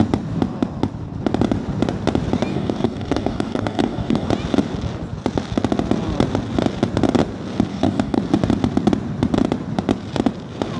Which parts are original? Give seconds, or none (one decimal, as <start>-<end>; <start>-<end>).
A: 0.0-2.5; 4.3-7.7; 8.2-10.8